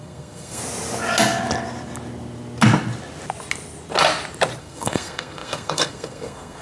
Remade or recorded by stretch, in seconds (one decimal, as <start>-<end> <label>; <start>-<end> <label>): 0.0-0.6 remade; 0.6-4.6 recorded; 4.6-6.6 remade